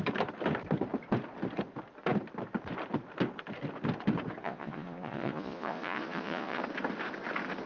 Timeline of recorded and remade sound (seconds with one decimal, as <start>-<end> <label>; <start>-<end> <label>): 0.0-4.4 recorded; 4.4-6.6 remade; 6.6-7.7 recorded